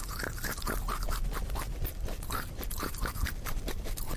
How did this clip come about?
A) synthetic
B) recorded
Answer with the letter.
A